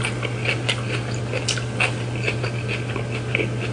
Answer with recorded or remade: recorded